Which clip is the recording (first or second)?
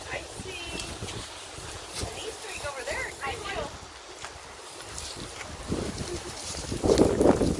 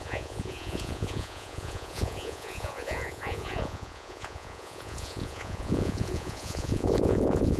first